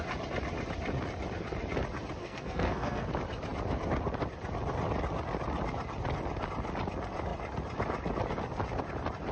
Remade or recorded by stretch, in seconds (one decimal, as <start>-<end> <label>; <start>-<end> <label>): 0.0-2.2 recorded; 2.2-3.1 remade; 3.1-9.3 recorded